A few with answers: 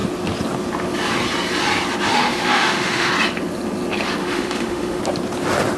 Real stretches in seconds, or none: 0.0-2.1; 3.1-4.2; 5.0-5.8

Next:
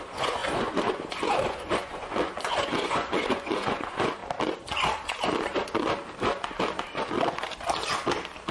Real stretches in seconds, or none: 4.2-8.5

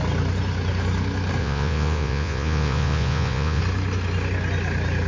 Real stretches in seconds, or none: 0.0-1.4; 3.6-5.1

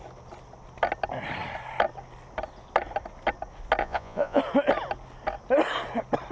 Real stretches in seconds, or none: 0.0-3.8; 4.4-6.3

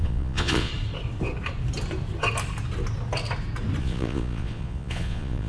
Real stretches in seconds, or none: 0.7-3.8

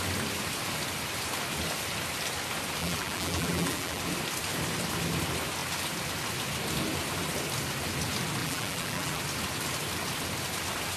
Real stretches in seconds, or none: 0.0-2.8; 4.0-8.4; 9.2-11.0

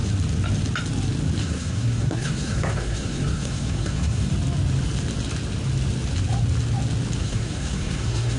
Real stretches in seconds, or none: 0.0-1.4; 4.3-7.2